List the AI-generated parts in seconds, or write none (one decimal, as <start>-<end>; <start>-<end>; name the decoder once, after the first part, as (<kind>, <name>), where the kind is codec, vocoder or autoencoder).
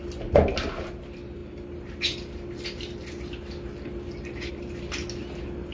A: none